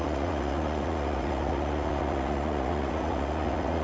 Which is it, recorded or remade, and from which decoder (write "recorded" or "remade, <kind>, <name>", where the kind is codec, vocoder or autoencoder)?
remade, vocoder, Vocos